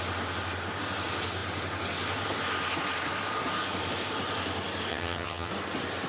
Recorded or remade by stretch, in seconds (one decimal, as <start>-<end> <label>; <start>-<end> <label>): 0.0-4.9 recorded; 4.9-5.5 remade; 5.5-6.1 recorded